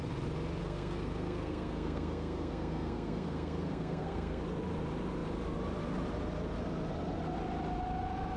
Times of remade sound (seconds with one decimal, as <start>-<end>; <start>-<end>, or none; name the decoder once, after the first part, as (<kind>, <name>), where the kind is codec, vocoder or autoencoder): 0.6-4.4 (codec, SNAC)